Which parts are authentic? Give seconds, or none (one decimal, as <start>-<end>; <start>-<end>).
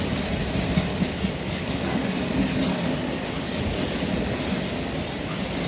0.0-0.9; 4.0-5.7